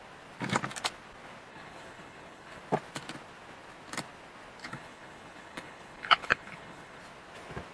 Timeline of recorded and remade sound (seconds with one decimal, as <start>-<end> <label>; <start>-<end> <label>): 0.0-1.5 recorded; 1.5-2.6 remade; 2.6-4.6 recorded; 4.6-7.0 remade; 7.0-7.7 recorded